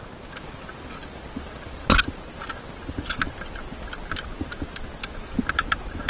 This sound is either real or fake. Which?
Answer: real